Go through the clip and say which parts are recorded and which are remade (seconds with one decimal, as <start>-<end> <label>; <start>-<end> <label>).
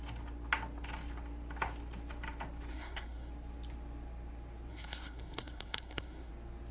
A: 0.0-2.7 recorded; 2.7-3.3 remade; 3.3-4.7 recorded; 4.7-6.3 remade; 6.3-6.7 recorded